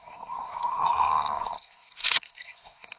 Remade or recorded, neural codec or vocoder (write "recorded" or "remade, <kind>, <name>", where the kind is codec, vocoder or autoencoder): remade, codec, SNAC